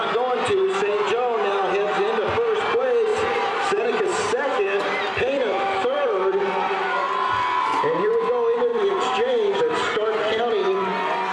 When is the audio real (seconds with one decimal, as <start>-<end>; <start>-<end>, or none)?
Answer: 0.0-3.1; 8.1-8.7; 9.6-11.3